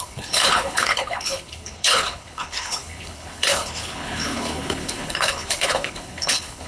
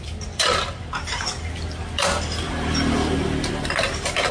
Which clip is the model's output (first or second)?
first